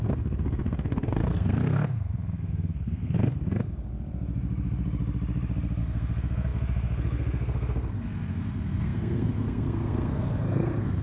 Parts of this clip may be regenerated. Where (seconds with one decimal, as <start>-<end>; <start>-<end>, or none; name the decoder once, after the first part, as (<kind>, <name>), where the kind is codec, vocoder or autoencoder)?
0.0-3.9 (codec, SNAC); 5.8-11.0